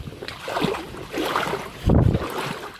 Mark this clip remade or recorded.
recorded